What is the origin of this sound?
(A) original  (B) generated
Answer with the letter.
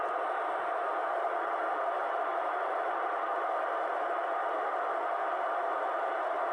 B